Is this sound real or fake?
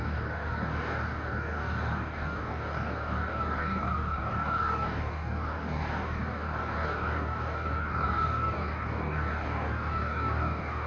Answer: fake